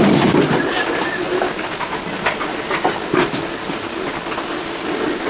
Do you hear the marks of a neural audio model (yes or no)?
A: no